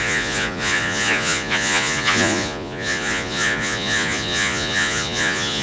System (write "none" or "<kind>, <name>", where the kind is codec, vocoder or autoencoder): vocoder, Vocos